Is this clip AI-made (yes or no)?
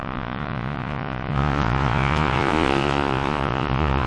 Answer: yes